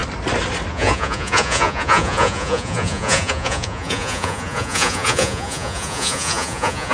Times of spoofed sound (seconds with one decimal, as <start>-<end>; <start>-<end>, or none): 0.7-6.9